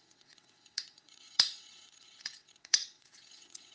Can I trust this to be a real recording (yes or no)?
no